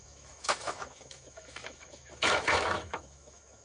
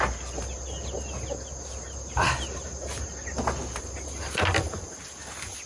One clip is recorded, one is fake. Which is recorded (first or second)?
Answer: second